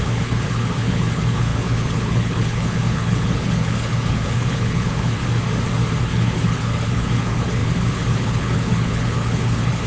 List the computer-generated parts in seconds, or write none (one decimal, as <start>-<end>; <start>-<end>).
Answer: 0.0-5.2; 6.0-9.9